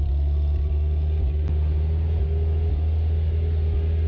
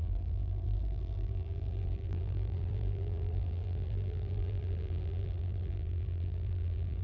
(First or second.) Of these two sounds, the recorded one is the first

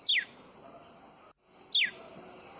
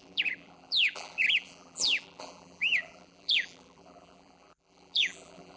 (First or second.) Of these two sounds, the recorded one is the first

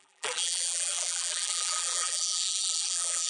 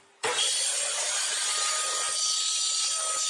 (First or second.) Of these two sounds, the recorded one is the second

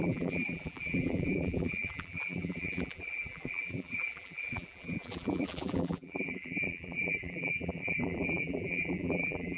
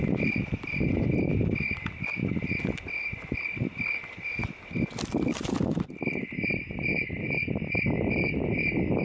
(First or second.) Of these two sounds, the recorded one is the second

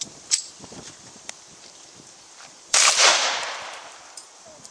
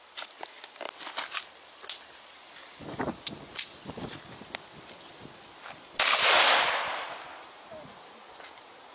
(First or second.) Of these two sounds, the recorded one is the second